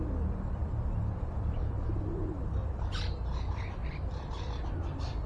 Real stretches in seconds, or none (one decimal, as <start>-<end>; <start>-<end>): 0.0-0.6; 2.1-2.6; 4.7-5.3